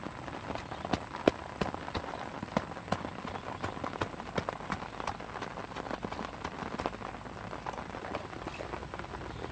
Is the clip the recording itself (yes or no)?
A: yes